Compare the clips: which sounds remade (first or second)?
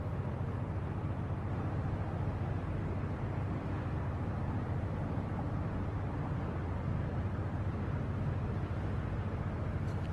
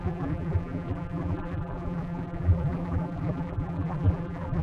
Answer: second